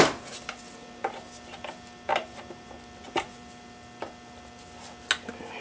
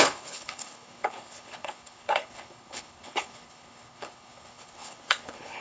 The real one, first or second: first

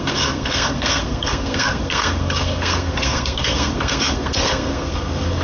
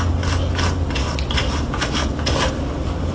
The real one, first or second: second